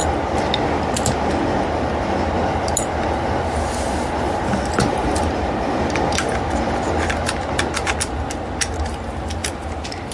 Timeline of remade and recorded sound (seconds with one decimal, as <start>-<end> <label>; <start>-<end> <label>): 0.0-4.9 recorded; 4.9-5.4 remade; 5.4-9.4 recorded; 9.4-10.1 remade